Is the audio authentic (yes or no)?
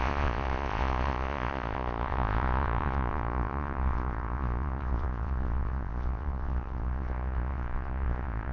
no